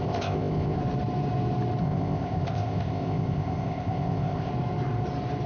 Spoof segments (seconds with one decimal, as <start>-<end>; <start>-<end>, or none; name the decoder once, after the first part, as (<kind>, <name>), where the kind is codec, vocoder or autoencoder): 0.0-0.8 (codec, ZipCodec); 1.8-4.5